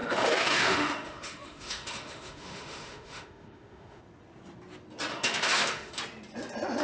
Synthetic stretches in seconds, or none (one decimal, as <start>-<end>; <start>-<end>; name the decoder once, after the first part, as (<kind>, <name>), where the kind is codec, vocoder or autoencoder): 0.0-4.0 (autoencoder, DAC-VAE); 5.1-6.0

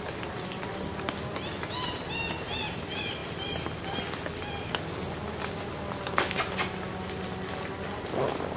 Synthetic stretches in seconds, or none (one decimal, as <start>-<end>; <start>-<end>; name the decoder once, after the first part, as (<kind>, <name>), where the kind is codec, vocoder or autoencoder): none

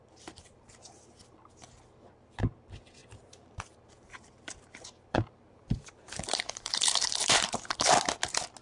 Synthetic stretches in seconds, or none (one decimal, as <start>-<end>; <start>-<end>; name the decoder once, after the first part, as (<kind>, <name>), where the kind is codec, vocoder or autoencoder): 3.0-7.9 (vocoder, BigVGAN v2)

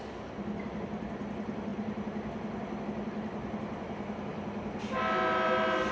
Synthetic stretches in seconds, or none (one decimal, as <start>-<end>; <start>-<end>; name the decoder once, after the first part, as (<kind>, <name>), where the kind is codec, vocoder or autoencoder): none